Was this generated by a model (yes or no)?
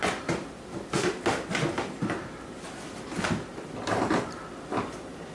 no